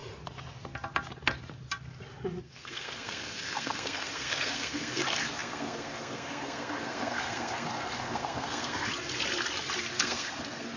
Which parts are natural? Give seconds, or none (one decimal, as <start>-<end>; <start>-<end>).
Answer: 0.0-2.4; 8.9-9.9